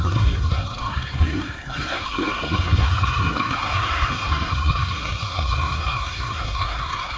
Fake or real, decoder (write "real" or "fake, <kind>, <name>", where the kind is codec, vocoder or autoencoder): fake, codec, SNAC